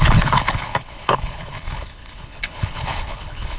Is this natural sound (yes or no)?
no